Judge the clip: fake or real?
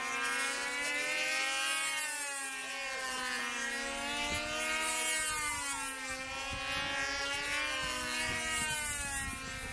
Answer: real